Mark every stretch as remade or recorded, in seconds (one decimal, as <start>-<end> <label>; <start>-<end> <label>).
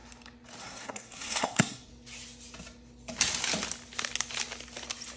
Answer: 0.0-0.6 recorded; 0.6-1.9 remade; 1.9-5.2 recorded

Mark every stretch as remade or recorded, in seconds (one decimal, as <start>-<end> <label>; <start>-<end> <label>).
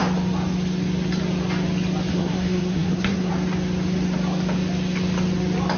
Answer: 0.0-2.1 recorded; 2.1-3.3 remade; 3.3-5.8 recorded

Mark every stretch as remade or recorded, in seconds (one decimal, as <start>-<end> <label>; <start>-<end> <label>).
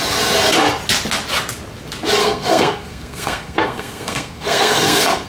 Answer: 0.0-2.2 recorded; 2.2-5.3 remade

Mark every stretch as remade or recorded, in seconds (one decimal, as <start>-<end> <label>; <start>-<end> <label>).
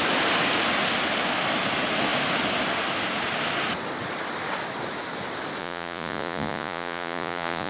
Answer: 0.0-5.6 recorded; 5.6-7.7 remade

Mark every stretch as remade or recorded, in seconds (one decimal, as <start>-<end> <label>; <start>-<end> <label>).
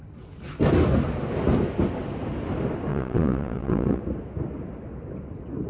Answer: 0.0-2.9 recorded; 2.9-4.0 remade; 4.0-5.7 recorded